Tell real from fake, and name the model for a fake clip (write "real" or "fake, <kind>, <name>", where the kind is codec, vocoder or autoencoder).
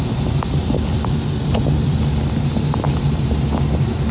fake, vocoder, BigVGAN v2